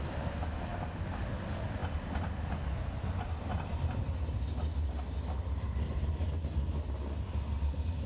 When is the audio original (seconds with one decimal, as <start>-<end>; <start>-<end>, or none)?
0.0-8.1